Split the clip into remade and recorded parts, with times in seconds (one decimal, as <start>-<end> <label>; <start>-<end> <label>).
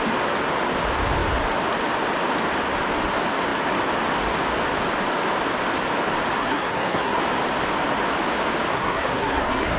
0.0-6.4 recorded; 6.4-7.2 remade; 7.2-8.7 recorded; 8.7-9.8 remade